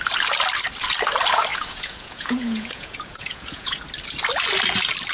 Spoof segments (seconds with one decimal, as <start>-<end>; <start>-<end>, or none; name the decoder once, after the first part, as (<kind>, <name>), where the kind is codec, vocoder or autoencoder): 1.5-3.8 (vocoder, Vocos)